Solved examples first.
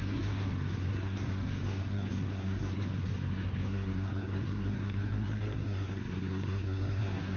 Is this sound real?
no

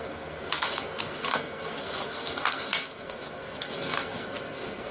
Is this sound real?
no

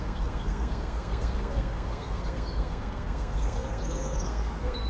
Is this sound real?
no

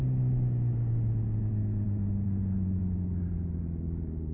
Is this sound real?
yes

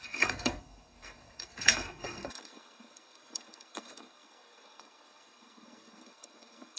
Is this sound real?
no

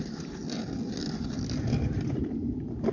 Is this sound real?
yes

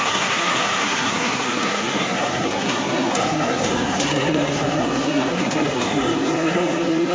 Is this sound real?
no